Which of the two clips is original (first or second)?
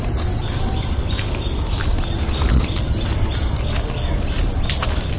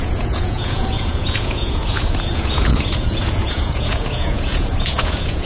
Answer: first